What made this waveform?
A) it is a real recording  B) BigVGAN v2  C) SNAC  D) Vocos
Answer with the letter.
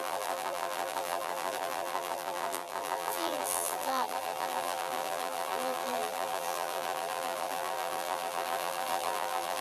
B